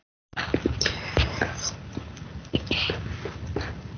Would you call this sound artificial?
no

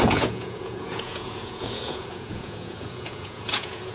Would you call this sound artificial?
yes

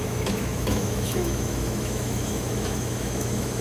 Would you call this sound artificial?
yes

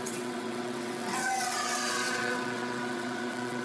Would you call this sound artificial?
yes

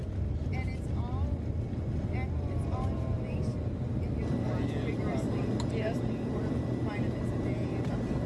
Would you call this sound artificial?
no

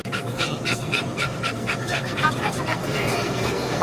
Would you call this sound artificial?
yes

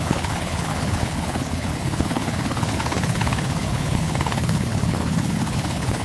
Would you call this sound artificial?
yes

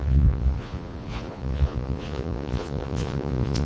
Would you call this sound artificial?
yes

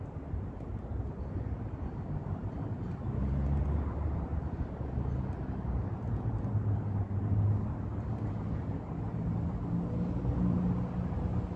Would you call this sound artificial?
no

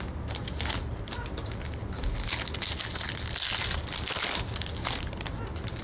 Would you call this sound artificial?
no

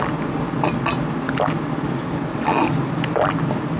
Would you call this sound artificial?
no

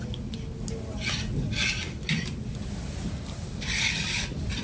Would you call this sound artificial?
no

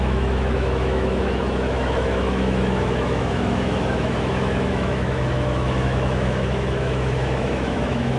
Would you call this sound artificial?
yes